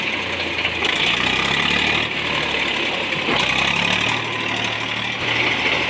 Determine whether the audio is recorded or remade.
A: recorded